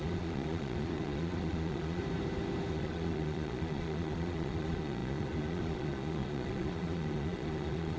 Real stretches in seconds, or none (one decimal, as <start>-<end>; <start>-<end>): 2.0-2.7